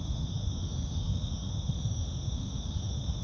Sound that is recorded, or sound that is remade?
remade